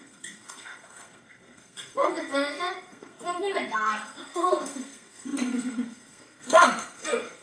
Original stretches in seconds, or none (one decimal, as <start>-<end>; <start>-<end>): none